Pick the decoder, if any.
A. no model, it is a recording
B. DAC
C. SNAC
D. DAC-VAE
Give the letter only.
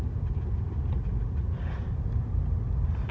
A